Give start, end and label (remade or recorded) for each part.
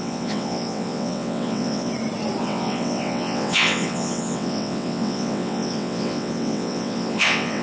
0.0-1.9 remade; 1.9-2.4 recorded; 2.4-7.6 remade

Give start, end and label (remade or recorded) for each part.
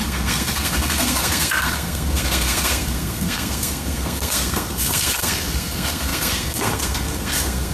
0.0-7.7 remade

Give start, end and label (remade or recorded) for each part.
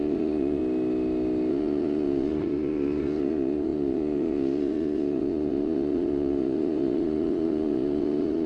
0.0-0.6 remade; 0.6-1.5 recorded; 1.5-8.5 remade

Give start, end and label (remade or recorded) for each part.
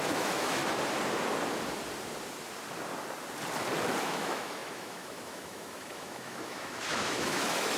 0.0-0.6 remade; 0.6-4.0 recorded; 4.0-7.8 remade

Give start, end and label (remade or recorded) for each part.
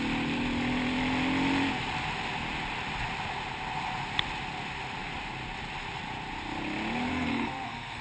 0.0-7.1 recorded; 7.1-8.0 remade